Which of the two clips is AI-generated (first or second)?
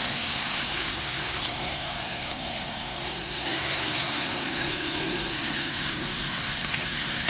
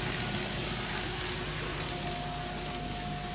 first